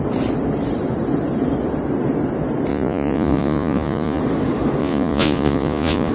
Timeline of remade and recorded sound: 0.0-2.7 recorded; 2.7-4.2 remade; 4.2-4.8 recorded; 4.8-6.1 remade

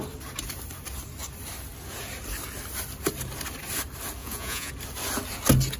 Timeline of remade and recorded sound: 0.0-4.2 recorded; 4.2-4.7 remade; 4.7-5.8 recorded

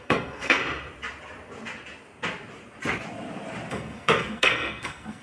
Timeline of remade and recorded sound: 0.0-0.6 remade; 0.6-3.7 recorded; 3.7-5.2 remade

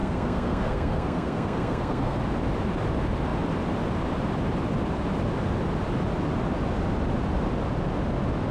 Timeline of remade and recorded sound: 0.0-2.2 remade; 2.2-8.5 recorded

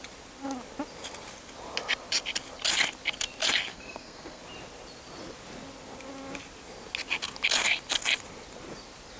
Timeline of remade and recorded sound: 0.0-3.7 recorded; 3.7-4.4 remade; 4.4-9.2 recorded